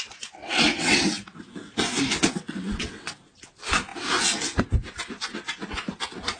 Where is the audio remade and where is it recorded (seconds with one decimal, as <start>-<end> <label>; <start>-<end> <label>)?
0.0-0.4 recorded; 0.4-1.0 remade; 1.0-2.2 recorded; 2.2-3.1 remade; 3.1-6.4 recorded